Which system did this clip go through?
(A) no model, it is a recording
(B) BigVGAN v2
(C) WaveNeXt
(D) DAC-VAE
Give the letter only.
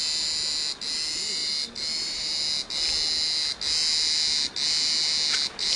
A